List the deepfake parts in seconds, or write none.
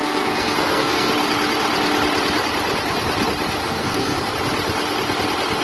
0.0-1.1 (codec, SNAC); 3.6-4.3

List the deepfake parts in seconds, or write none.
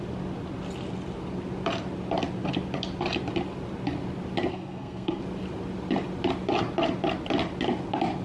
4.5-5.2 (codec, SNAC)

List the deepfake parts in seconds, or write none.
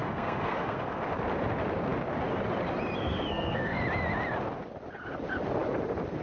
0.0-1.0 (codec, SNAC); 3.0-3.8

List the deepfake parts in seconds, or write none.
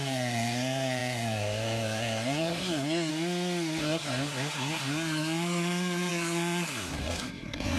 0.0-3.1 (codec, SNAC); 3.8-7.8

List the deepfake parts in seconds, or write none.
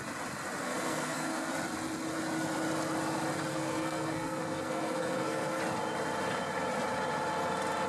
0.6-1.5 (codec, SNAC); 3.5-5.6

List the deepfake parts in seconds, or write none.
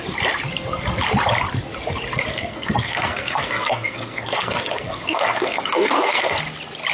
2.3-6.4 (codec, SNAC)